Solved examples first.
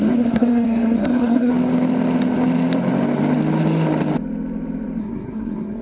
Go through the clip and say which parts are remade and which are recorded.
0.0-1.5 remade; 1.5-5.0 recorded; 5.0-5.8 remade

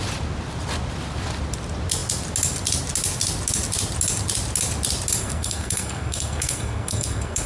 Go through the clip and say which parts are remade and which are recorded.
0.0-5.2 recorded; 5.2-7.5 remade

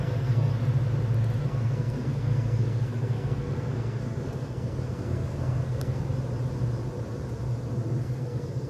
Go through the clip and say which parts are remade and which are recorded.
0.0-0.5 remade; 0.5-1.4 recorded; 1.4-6.1 remade; 6.1-8.0 recorded; 8.0-8.7 remade

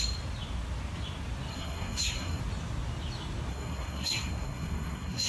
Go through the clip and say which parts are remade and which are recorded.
0.0-1.5 recorded; 1.5-2.4 remade; 2.4-3.5 recorded; 3.5-5.3 remade